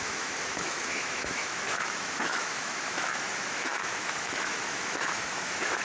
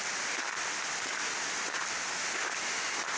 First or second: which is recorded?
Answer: second